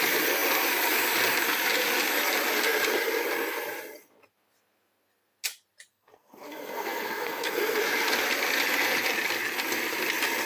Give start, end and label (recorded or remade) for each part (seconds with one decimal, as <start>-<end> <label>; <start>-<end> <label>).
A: 0.0-5.9 recorded; 5.9-7.8 remade; 7.8-10.5 recorded